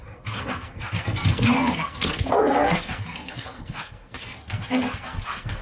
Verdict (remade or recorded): remade